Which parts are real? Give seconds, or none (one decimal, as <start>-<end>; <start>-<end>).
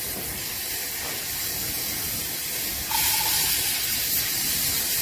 0.0-5.0